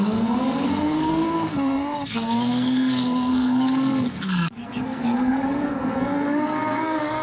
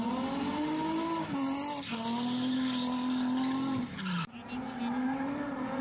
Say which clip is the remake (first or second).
first